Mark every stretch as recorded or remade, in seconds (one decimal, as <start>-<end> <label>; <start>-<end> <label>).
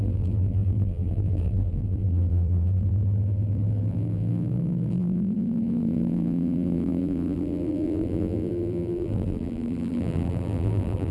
0.0-11.1 remade